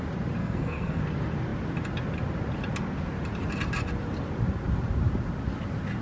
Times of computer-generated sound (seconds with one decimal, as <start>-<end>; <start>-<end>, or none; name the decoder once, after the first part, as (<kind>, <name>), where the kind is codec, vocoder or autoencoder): 0.4-1.0 (codec, SNAC)